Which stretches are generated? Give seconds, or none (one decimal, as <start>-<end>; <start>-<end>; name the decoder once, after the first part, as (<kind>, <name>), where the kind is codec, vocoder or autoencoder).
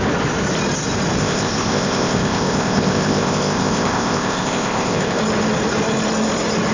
1.2-5.2 (codec, ZipCodec)